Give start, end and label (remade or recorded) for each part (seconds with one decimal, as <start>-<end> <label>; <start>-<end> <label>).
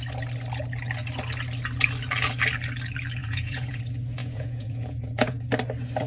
0.0-3.2 recorded; 3.2-3.8 remade; 3.8-4.2 recorded; 4.2-5.4 remade; 5.4-6.1 recorded